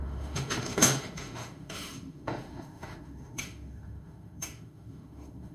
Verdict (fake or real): fake